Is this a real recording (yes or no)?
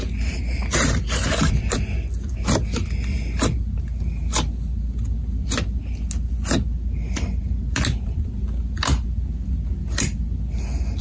yes